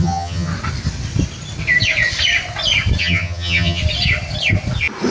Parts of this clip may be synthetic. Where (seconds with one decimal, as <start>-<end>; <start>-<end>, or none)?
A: 0.0-0.5; 3.0-3.8